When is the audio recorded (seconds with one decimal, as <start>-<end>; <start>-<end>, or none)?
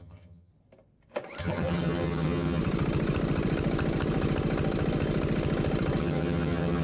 0.5-1.4; 2.6-6.0